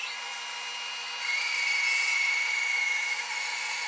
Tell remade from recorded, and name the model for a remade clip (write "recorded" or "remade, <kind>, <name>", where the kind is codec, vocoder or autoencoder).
recorded